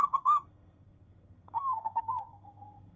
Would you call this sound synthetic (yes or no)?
yes